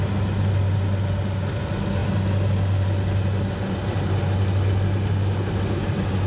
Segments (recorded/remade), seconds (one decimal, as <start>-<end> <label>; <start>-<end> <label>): 0.0-6.3 recorded